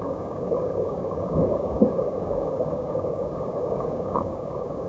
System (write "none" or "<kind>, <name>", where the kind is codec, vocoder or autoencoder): codec, DAC